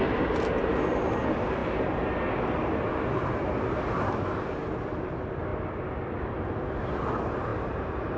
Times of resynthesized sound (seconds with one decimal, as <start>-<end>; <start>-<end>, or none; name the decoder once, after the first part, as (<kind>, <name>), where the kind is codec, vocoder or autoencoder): 7.5-8.2 (vocoder, BigVGAN v2)